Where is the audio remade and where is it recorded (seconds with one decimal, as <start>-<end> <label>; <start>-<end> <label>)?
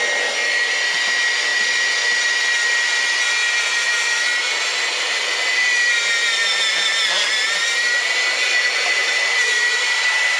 0.0-1.5 recorded; 1.5-2.1 remade; 2.1-9.0 recorded; 9.0-10.4 remade